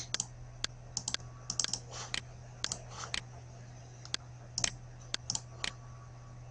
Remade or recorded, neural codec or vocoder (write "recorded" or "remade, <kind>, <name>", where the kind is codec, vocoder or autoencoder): recorded